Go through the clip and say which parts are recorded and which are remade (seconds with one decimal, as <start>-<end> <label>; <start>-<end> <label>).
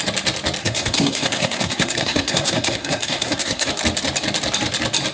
0.0-0.6 recorded; 0.6-3.7 remade; 3.7-5.1 recorded